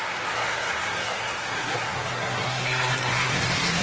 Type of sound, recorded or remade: remade